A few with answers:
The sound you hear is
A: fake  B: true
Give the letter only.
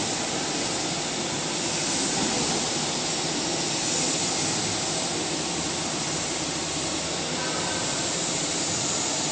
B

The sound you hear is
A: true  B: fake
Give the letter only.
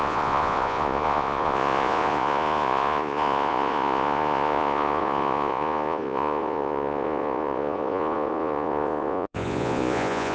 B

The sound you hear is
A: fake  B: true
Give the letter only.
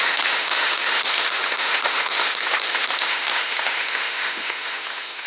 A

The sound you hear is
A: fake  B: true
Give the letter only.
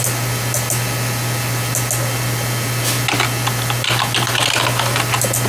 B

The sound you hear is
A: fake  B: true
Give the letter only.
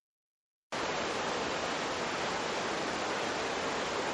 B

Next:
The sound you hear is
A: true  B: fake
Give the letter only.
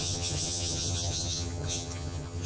B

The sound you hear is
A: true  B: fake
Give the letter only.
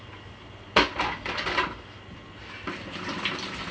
A